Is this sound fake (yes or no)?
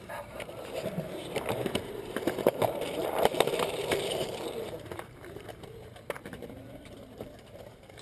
yes